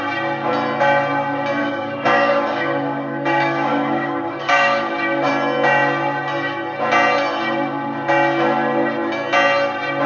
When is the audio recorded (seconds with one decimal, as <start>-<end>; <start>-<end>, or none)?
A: 0.0-1.6; 5.3-10.1